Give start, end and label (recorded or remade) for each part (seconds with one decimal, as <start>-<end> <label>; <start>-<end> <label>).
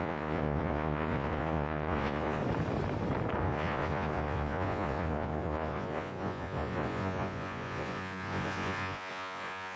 0.0-2.4 remade; 2.4-3.4 recorded; 3.4-9.8 remade